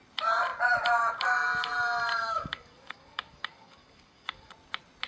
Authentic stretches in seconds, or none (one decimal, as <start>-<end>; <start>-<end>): 0.0-2.1; 4.5-5.1